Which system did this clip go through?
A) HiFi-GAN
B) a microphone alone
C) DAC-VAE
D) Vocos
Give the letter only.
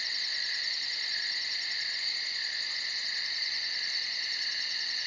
B